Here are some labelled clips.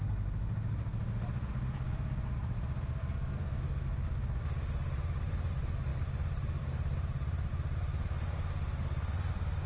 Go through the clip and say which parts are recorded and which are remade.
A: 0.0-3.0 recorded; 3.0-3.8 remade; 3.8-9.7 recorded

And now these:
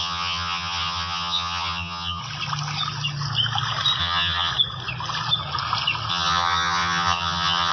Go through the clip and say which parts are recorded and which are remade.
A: 0.0-2.2 remade; 2.2-4.0 recorded; 4.0-4.5 remade; 4.5-6.1 recorded; 6.1-7.7 remade

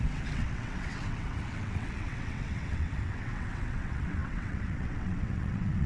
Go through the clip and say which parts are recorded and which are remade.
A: 0.0-5.9 remade

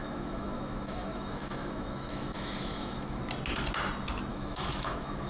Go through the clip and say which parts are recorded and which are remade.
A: 0.0-3.2 remade; 3.2-4.3 recorded; 4.3-5.3 remade